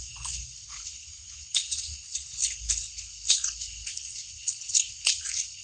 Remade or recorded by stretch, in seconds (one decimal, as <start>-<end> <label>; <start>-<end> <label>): 0.0-5.6 remade